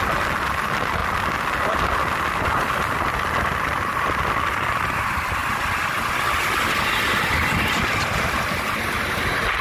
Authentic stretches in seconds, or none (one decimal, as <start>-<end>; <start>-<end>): 0.0-9.6

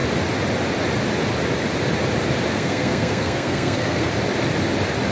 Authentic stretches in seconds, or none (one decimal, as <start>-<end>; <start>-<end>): 0.0-2.5; 4.1-5.1